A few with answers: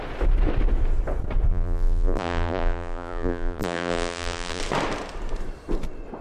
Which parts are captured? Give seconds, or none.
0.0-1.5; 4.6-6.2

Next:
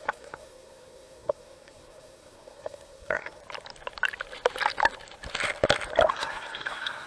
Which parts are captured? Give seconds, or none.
3.4-6.1

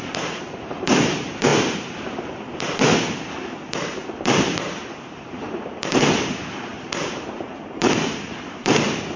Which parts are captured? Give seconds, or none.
none

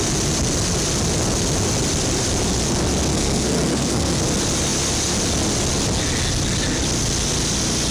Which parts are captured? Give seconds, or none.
0.0-3.1; 4.2-7.9

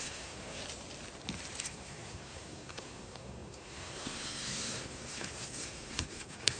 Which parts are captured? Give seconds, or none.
0.6-1.6

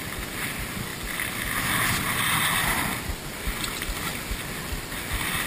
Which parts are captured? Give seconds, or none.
0.0-5.5